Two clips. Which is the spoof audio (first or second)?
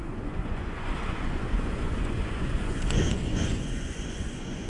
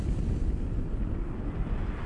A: first